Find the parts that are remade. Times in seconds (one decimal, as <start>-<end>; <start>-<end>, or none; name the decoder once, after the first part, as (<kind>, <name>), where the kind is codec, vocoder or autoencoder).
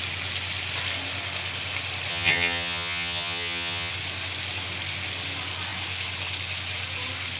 2.1-3.9 (vocoder, HiFi-GAN)